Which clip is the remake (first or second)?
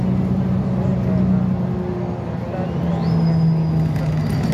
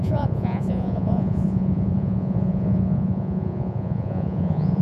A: second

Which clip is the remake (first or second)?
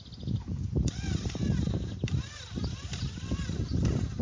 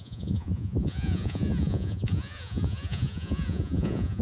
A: second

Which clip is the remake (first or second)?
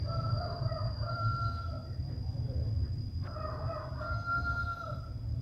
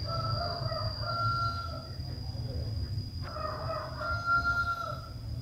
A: first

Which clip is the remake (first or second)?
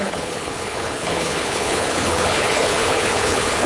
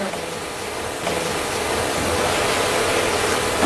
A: first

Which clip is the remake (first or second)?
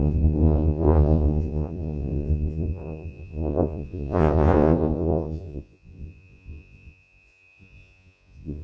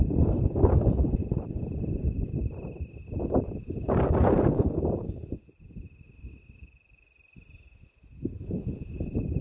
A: first